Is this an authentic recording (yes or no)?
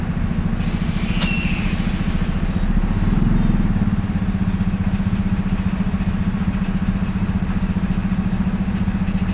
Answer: yes